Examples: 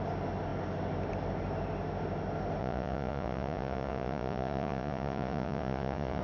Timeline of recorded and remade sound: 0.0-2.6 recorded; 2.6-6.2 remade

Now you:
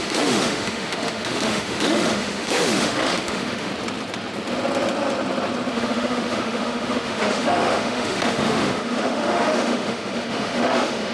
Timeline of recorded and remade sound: 0.0-3.7 remade; 3.7-5.7 recorded; 5.7-11.1 remade

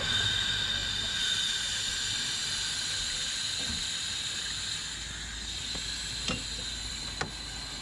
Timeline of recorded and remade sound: 0.0-7.8 recorded

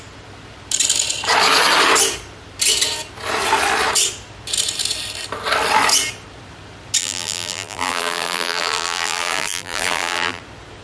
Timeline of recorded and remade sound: 0.0-7.0 recorded; 7.0-10.4 remade; 10.4-10.8 recorded

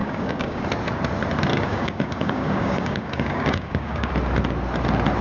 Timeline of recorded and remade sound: 0.0-0.6 remade; 0.6-1.5 recorded; 1.5-4.1 remade; 4.1-5.2 recorded